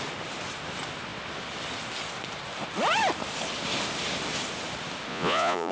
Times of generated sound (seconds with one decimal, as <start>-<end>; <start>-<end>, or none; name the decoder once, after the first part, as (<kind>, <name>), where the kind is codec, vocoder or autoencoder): 5.1-5.7 (vocoder, Vocos)